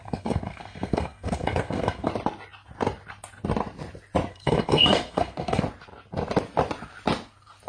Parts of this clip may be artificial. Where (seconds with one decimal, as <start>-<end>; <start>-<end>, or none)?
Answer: 0.0-2.1; 4.3-5.6